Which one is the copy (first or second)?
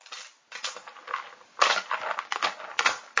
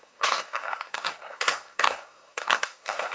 second